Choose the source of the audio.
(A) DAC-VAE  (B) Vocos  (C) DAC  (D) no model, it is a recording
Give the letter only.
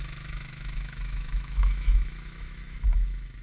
A